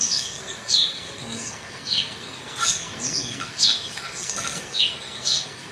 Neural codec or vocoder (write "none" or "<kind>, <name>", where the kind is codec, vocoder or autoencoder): codec, SNAC